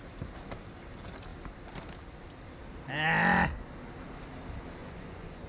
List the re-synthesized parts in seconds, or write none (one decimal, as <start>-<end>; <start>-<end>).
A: 4.8-5.5